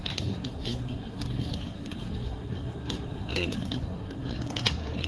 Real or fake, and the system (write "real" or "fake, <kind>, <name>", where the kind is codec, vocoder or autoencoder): fake, codec, SNAC